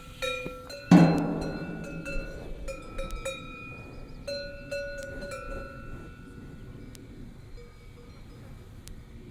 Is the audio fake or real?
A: real